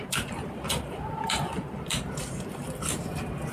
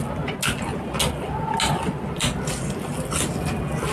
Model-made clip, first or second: first